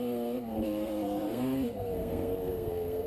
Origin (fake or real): fake